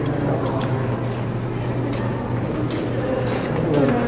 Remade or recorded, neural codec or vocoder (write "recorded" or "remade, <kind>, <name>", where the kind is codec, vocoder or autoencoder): recorded